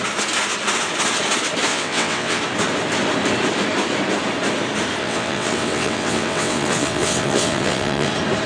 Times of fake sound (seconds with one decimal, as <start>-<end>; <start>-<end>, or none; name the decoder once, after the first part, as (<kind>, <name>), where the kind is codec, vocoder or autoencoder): 1.7-2.4 (vocoder, WaveNeXt); 5.0-8.1